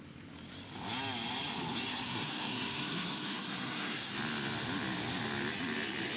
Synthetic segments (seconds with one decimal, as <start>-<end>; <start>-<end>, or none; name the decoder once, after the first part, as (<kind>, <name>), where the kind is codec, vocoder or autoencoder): 1.9-4.1 (codec, SNAC)